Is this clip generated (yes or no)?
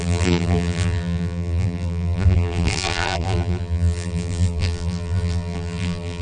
yes